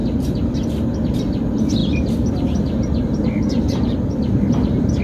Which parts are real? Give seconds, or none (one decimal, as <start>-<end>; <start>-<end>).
0.0-1.8